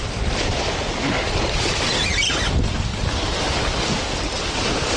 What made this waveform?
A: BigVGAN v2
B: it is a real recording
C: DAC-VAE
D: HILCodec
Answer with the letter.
B